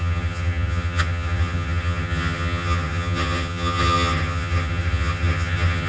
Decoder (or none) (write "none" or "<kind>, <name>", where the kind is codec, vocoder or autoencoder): vocoder, HiFi-GAN